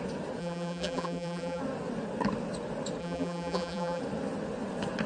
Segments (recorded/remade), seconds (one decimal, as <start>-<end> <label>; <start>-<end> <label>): 0.0-0.4 recorded; 0.4-1.6 remade; 1.6-3.0 recorded; 3.0-4.0 remade; 4.0-5.1 recorded